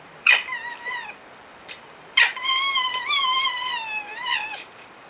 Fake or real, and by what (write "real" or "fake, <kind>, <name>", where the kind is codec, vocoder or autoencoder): fake, vocoder, BigVGAN v2